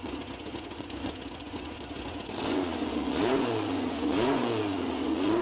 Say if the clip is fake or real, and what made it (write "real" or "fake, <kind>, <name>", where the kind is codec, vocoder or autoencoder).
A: fake, vocoder, Vocos